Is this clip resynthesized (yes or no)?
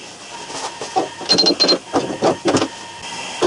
no